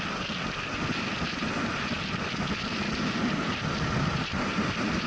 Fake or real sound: real